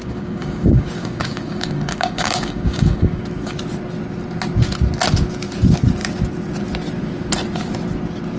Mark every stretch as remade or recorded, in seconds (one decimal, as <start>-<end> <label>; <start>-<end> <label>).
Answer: 0.0-3.2 remade; 3.2-8.4 recorded